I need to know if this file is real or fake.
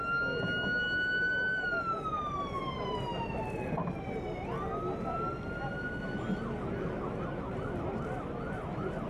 real